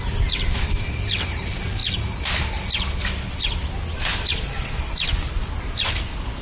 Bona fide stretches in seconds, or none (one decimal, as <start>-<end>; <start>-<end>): 0.0-6.4